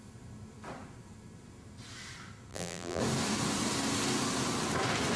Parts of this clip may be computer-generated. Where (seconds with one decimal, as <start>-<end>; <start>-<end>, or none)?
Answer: 2.5-3.0